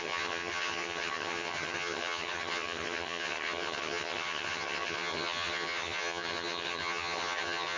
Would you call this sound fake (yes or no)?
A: yes